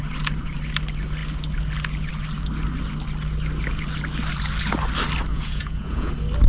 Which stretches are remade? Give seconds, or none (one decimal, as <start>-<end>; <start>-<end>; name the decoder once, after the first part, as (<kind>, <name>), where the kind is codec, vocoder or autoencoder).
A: 5.3-6.1 (vocoder, Vocos)